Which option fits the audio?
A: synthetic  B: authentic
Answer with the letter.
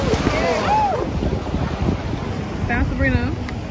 B